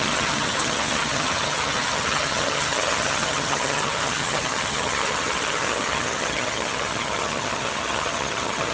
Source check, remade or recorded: remade